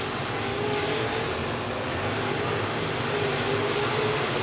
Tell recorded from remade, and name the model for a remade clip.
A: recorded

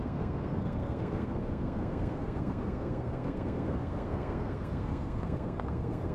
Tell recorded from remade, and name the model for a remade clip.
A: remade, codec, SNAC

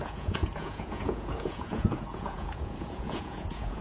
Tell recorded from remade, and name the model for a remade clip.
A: remade, vocoder, Vocos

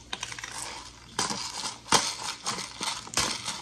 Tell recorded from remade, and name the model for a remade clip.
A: recorded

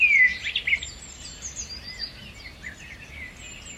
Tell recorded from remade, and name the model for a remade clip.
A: recorded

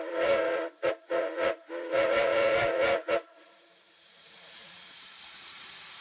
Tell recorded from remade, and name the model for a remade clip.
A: remade, vocoder, Vocos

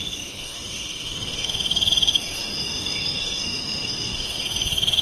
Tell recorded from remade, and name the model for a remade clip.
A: remade, autoencoder, DAC-VAE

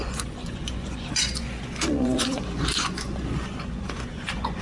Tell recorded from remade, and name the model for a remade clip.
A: remade, vocoder, Vocos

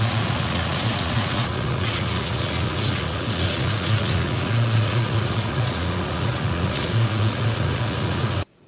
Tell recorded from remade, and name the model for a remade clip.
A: remade, vocoder, Vocos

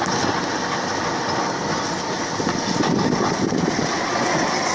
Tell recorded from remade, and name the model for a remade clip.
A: recorded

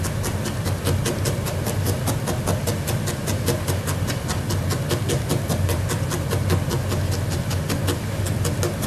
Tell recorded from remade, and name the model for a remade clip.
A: recorded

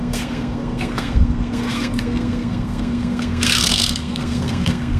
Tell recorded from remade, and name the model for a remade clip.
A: remade, codec, SNAC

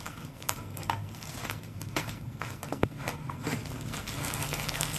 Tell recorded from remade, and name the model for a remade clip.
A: remade, codec, SNAC